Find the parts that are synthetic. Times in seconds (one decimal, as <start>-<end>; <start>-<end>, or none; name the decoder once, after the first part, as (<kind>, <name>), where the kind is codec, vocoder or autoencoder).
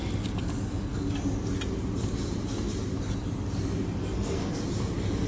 4.0-4.6 (codec, SNAC)